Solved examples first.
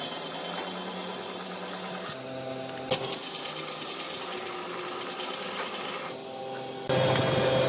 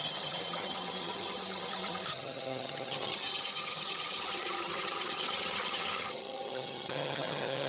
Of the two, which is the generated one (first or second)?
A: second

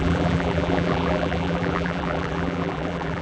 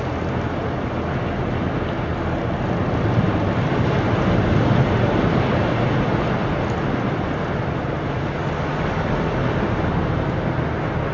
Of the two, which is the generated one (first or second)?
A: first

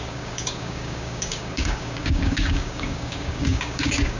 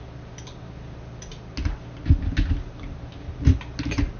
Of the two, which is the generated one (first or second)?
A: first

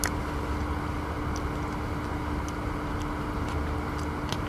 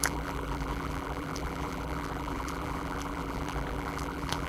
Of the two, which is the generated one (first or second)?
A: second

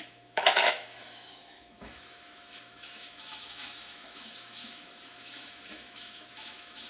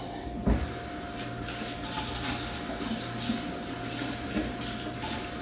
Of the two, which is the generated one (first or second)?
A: first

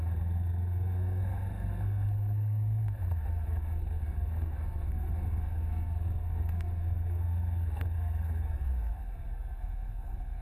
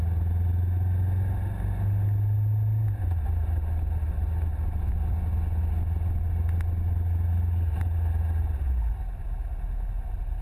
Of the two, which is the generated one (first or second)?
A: first